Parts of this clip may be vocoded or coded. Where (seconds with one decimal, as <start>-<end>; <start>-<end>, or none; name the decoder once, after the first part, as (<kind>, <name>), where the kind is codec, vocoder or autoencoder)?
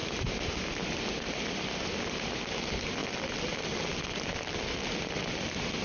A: none